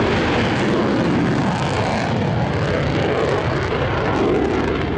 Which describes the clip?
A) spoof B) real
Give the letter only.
B